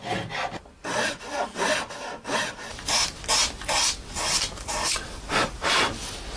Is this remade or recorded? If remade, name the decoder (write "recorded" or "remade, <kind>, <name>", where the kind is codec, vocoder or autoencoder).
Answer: recorded